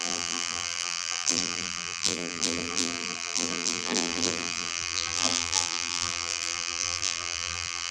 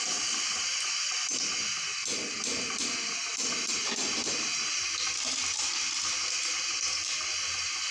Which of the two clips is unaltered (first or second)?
second